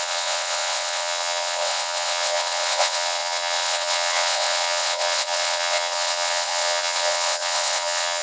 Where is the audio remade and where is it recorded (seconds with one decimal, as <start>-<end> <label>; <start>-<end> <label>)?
0.0-8.2 remade